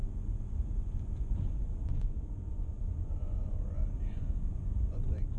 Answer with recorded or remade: remade